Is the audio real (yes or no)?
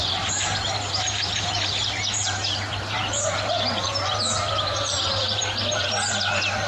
no